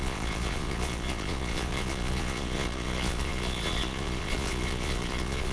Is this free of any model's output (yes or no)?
no